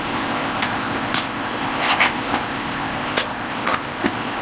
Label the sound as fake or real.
fake